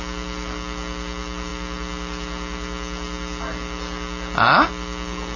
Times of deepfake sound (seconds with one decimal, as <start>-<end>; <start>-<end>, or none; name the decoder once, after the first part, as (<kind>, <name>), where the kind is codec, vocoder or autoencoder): none